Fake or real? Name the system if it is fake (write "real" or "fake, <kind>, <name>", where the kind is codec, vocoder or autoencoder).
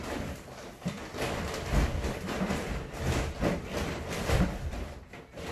fake, vocoder, BigVGAN v2